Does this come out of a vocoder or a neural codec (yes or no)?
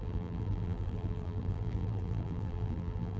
yes